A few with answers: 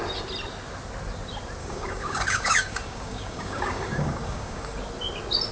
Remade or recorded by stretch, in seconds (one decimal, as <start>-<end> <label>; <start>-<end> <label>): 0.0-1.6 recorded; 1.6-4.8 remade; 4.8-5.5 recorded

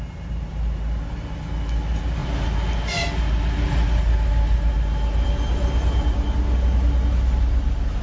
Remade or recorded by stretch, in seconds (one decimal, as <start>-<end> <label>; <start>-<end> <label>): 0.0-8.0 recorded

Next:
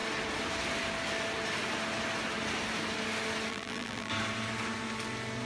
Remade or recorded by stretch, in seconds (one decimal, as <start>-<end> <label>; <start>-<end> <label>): 0.0-3.5 recorded; 3.5-4.1 remade; 4.1-5.5 recorded